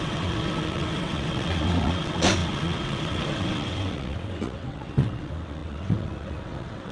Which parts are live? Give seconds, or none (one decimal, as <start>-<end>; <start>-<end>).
none